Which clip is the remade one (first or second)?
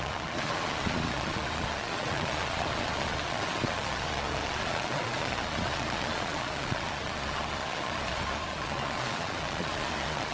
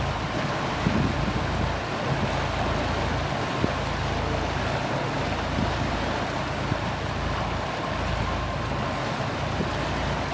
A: first